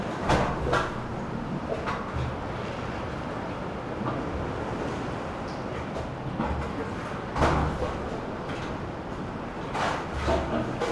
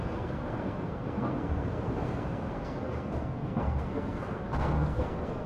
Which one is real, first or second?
first